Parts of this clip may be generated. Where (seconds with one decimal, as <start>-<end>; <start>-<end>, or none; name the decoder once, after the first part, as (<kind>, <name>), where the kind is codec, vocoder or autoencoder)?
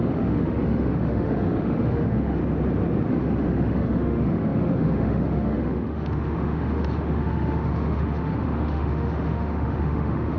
0.0-2.4 (autoencoder, DAC-VAE); 3.1-10.4